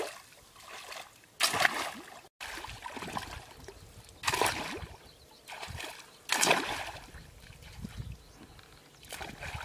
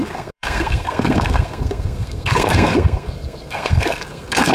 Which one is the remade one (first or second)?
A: second